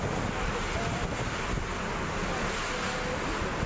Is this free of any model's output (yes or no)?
yes